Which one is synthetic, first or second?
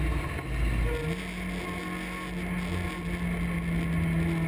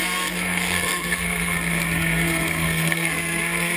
second